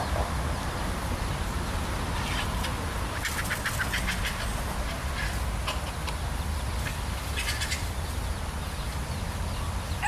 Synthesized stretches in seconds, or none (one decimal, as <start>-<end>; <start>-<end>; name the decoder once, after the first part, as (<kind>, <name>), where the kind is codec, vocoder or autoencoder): none